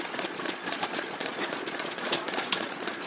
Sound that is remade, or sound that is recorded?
remade